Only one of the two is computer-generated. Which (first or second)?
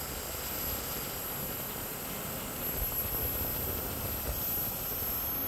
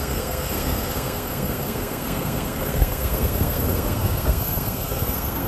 second